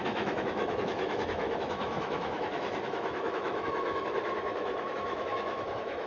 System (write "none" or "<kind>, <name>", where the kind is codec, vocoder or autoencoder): autoencoder, DAC-VAE